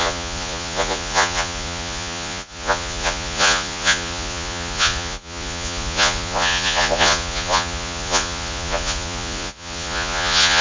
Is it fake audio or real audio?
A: fake